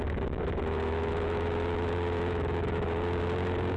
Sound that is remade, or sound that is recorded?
remade